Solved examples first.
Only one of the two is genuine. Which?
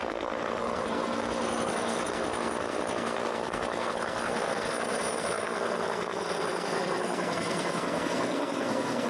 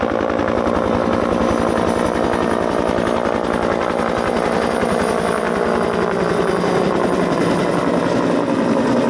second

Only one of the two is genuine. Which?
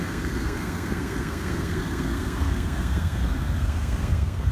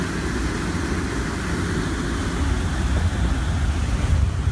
second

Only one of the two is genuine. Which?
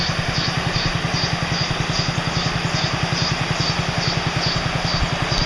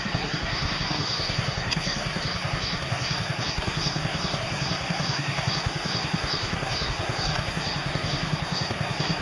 first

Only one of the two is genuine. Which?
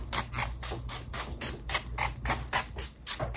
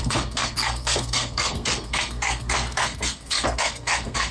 first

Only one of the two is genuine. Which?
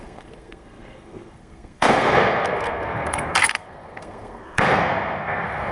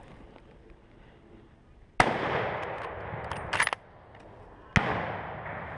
second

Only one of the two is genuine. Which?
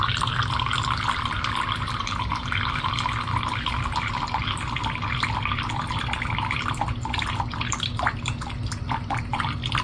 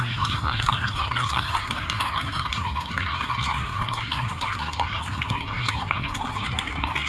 first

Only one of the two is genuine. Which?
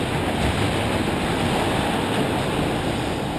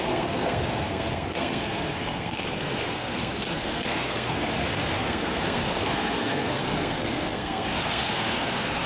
first